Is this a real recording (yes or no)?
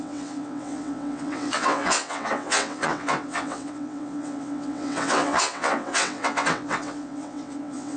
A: no